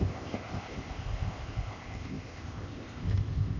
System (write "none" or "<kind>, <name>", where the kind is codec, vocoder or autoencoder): codec, ZipCodec